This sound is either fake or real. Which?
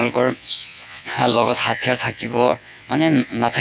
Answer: fake